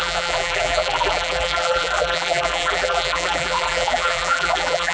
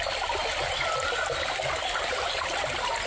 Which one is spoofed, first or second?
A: first